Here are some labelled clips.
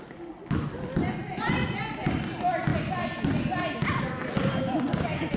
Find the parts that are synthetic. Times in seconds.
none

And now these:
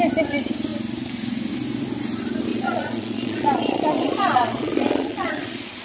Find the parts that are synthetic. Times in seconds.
2.5-5.8 (vocoder, Vocos)

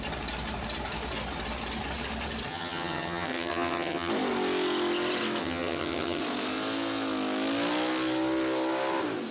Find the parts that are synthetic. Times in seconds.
2.5-4.1 (vocoder, HiFi-GAN); 5.4-6.2

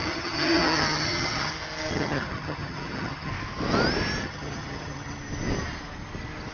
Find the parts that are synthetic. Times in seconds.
0.0-1.5 (vocoder, HiFi-GAN); 1.9-3.3; 4.2-5.2